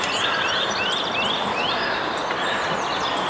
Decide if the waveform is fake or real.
real